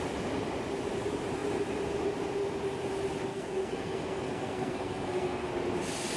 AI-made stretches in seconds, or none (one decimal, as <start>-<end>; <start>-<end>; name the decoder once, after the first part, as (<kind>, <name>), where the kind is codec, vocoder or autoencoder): 3.3-5.5 (codec, SNAC)

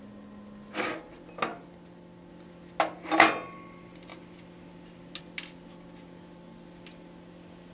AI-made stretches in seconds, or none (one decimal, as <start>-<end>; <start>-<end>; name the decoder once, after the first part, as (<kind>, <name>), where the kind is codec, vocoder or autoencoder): none

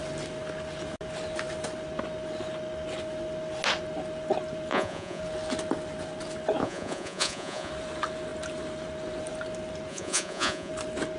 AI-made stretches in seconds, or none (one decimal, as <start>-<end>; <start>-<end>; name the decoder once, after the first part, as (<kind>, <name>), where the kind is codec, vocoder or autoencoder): 4.7-5.2 (vocoder, Vocos); 6.6-7.7; 9.9-10.7

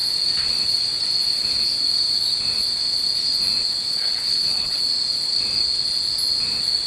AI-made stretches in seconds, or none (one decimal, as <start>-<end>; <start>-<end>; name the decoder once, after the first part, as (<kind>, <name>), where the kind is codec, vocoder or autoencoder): 3.9-4.8 (codec, HILCodec)